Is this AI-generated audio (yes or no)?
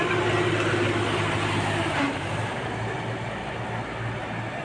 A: no